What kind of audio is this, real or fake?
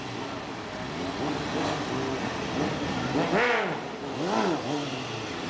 real